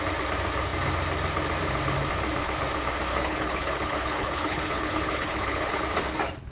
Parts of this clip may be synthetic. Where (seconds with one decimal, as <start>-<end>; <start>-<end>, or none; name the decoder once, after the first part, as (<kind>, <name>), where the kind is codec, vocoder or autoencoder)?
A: 3.1-5.8 (codec, HILCodec)